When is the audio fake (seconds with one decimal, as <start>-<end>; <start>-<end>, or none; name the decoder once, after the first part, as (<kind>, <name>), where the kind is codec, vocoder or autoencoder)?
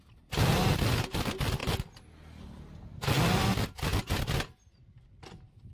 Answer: none